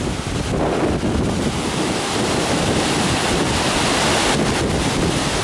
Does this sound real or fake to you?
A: real